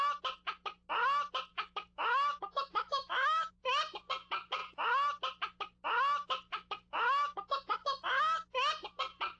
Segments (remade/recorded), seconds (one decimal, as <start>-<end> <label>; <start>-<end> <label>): 0.0-1.5 recorded; 1.5-3.6 remade; 3.6-6.2 recorded; 6.2-7.7 remade; 7.7-9.4 recorded